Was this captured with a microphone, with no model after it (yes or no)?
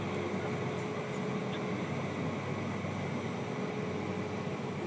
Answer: yes